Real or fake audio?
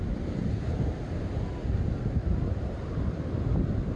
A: real